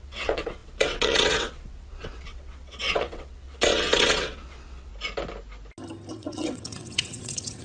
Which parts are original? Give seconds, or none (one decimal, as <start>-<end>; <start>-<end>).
4.9-6.1